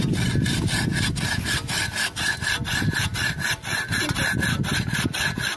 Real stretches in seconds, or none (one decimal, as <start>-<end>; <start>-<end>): 0.0-5.6